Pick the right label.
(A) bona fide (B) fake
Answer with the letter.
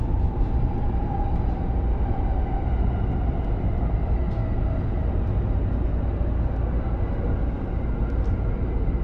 A